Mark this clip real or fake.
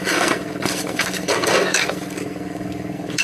fake